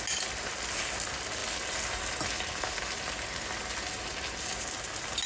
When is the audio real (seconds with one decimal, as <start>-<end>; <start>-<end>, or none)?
0.0-5.3